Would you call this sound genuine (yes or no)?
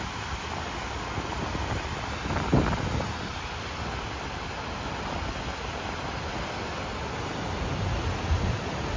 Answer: yes